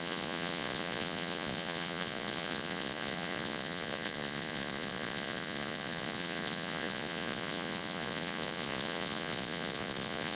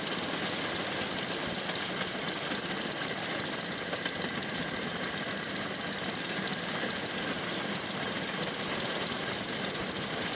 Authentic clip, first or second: second